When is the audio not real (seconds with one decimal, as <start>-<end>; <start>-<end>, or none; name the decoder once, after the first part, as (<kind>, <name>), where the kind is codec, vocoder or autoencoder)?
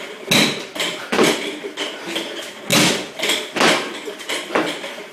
none